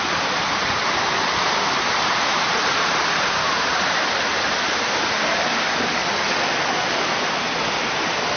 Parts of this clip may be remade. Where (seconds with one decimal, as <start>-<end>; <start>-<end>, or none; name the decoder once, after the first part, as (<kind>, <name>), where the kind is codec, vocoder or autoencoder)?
0.0-6.0 (vocoder, BigVGAN v2); 7.9-8.4